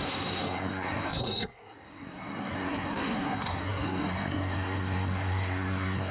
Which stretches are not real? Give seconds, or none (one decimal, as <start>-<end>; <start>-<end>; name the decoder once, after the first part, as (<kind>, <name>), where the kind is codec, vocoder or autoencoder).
0.0-6.1 (codec, SNAC)